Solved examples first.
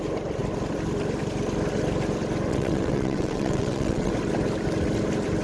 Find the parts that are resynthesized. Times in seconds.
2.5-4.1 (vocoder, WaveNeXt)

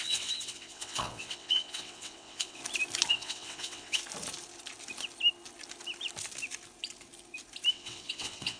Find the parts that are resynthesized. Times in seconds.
0.0-2.6 (vocoder, WaveNeXt); 3.1-4.0; 7.7-8.6

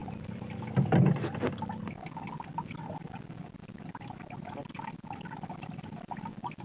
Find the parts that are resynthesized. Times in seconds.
none